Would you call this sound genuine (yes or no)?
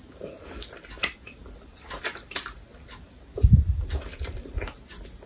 yes